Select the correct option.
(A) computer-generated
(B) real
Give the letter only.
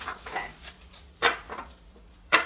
A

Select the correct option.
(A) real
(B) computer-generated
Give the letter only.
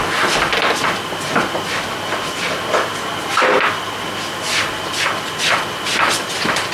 A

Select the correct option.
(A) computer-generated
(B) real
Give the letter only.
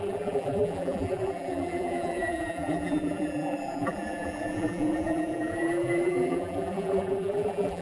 A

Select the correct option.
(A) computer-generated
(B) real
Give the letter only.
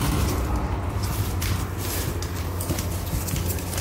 B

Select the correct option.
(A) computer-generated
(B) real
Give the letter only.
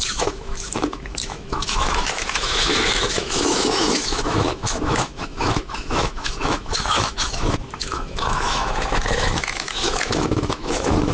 A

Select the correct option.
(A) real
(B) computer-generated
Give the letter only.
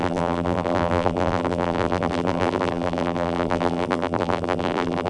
B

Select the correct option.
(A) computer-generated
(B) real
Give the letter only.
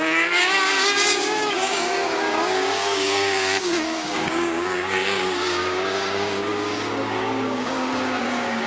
A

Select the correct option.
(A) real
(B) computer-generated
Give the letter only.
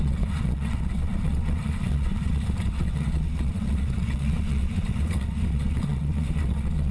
B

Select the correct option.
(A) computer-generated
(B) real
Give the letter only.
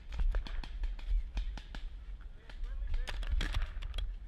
B